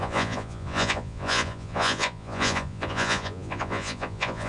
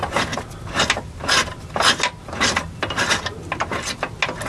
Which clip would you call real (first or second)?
second